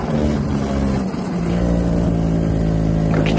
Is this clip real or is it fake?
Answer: real